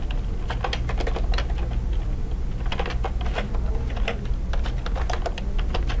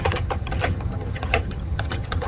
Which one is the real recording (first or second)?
first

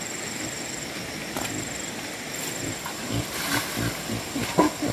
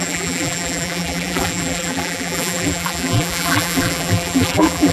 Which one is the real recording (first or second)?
first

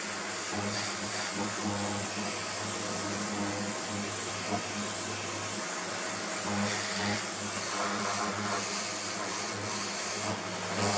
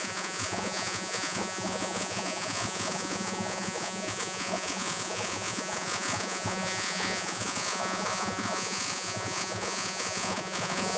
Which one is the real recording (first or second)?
first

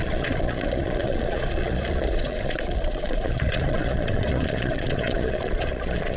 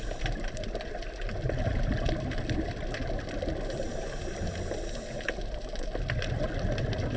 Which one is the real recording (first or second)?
second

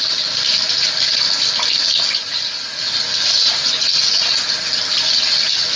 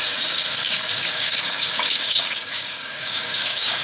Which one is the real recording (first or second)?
first